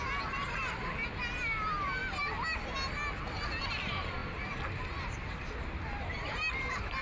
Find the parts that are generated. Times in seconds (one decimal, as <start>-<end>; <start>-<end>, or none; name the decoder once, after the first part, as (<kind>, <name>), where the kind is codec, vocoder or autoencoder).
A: none